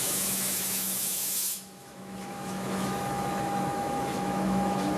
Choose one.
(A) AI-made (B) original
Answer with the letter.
A